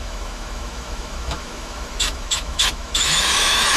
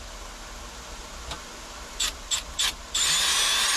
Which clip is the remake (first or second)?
first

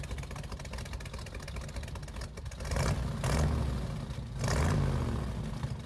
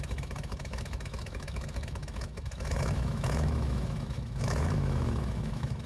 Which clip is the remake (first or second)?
second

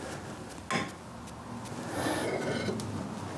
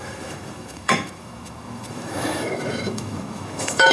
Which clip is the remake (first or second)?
second